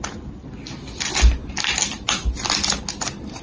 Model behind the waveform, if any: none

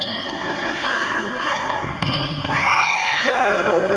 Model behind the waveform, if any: codec, SNAC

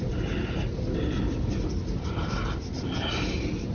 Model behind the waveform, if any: none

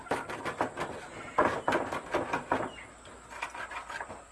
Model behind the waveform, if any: none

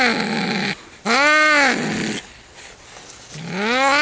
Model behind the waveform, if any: none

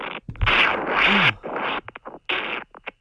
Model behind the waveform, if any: none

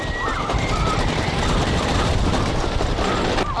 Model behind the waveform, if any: none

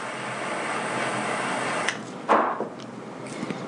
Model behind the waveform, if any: none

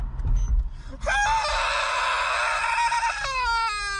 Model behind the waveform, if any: none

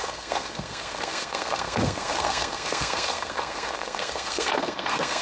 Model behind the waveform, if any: codec, SNAC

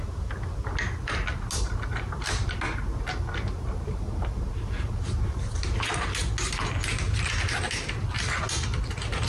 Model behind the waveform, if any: none